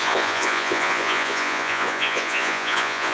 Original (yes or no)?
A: no